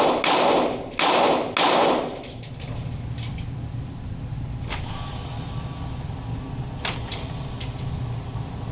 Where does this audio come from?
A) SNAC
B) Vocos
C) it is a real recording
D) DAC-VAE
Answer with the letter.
C